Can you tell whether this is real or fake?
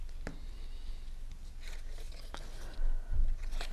real